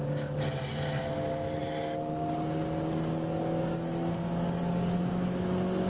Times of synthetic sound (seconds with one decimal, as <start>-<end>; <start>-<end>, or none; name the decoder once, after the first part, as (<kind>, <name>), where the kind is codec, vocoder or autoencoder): none